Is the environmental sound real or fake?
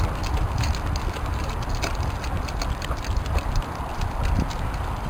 real